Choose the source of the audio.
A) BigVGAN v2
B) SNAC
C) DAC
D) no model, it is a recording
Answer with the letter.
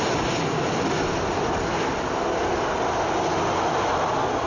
D